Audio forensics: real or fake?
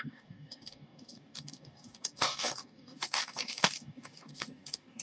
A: fake